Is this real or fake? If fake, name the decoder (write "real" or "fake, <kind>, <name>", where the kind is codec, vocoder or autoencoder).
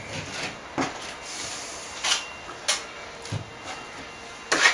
real